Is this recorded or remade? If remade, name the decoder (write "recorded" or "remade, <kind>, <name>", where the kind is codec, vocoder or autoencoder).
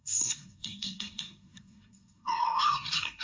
remade, codec, SNAC